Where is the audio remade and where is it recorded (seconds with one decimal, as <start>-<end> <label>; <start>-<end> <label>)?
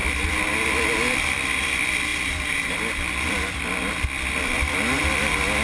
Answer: 0.0-5.6 recorded